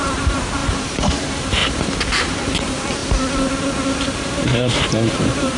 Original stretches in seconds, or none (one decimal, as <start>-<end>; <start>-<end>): 1.6-2.6; 3.0-4.1